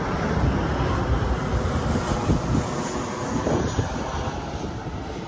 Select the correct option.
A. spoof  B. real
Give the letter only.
A